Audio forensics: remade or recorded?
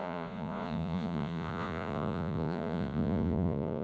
remade